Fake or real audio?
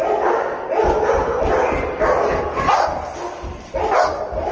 real